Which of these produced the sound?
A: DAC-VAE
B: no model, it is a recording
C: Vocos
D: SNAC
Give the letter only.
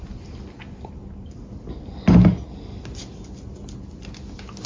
B